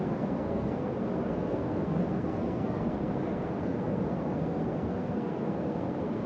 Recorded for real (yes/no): no